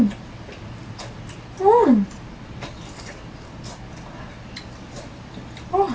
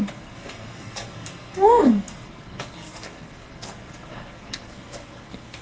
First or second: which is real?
first